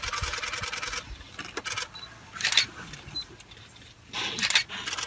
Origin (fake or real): real